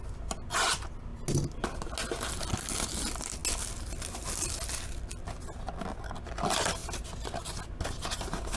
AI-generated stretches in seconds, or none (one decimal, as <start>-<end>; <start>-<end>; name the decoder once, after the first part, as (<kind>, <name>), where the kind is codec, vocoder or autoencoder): none